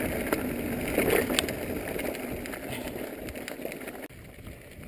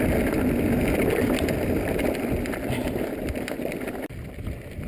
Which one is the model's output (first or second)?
second